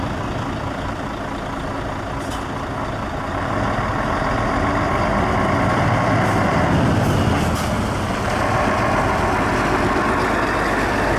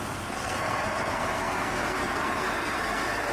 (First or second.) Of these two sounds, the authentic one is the first